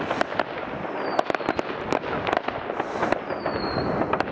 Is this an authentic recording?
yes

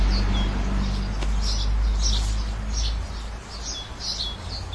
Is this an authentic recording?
yes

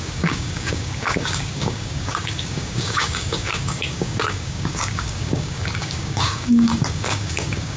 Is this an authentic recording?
no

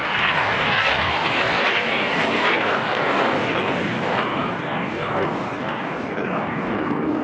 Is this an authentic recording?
no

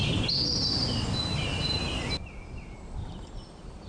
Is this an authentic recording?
yes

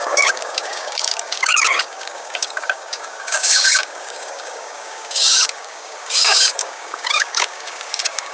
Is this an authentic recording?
no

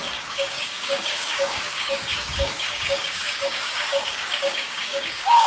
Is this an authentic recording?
no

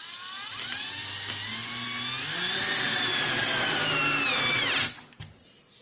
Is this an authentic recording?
yes